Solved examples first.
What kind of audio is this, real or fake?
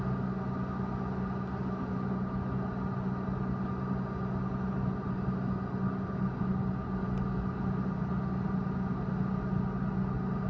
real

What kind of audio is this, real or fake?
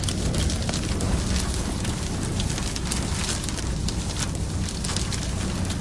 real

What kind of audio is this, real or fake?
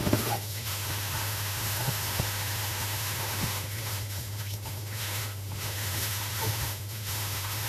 fake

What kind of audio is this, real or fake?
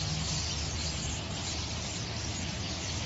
real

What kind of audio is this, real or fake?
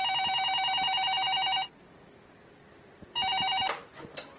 real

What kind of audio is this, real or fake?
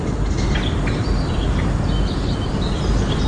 real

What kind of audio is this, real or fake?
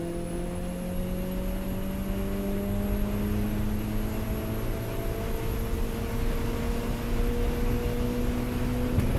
real